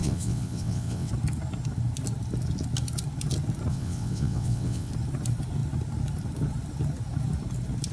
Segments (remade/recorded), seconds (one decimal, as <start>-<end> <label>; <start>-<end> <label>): 0.0-1.1 remade; 1.1-3.7 recorded; 3.7-4.9 remade; 4.9-7.9 recorded